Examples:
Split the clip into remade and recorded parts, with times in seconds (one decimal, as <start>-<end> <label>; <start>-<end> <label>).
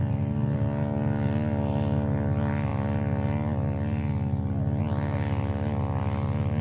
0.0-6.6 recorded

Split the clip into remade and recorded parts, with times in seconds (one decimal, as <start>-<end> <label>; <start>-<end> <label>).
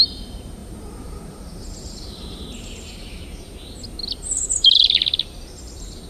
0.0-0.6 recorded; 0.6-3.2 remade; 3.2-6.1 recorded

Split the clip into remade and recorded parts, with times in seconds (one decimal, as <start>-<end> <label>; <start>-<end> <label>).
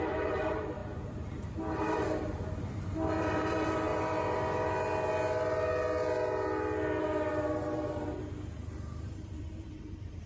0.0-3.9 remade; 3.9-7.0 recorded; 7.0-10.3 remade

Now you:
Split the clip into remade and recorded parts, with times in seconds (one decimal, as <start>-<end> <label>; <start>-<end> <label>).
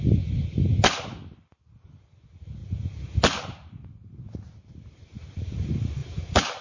0.0-6.0 recorded; 6.0-6.6 remade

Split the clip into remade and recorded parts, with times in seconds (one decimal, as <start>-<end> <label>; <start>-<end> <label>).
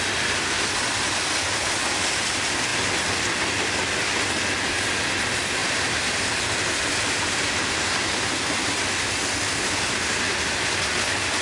0.0-5.6 recorded; 5.6-9.1 remade; 9.1-11.4 recorded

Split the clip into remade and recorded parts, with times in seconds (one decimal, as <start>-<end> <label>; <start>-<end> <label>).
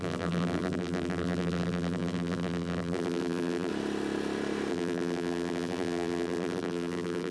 0.0-3.7 remade; 3.7-4.7 recorded; 4.7-7.3 remade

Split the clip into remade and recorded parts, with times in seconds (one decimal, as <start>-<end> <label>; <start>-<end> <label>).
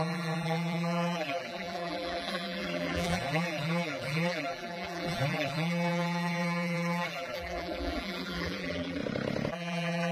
0.0-9.0 remade; 9.0-9.5 recorded; 9.5-10.1 remade